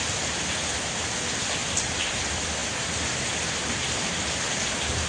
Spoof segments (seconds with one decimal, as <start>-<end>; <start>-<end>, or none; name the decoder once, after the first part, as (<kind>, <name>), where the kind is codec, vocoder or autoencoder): 1.6-2.2 (vocoder, BigVGAN v2)